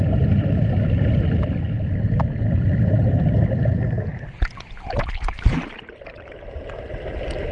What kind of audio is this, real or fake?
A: real